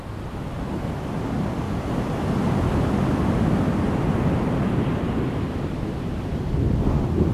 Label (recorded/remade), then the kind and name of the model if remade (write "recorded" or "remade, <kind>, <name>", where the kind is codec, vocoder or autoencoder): recorded